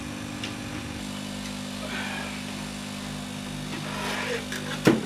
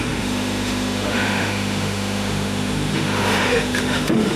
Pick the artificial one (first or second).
second